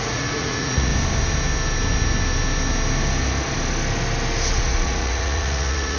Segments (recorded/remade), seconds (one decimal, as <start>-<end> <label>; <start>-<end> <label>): 0.0-0.9 remade; 0.9-4.5 recorded; 4.5-6.0 remade